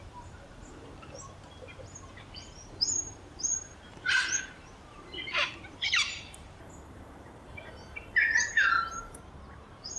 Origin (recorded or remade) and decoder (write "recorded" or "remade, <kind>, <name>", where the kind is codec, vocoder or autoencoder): remade, vocoder, BigVGAN v2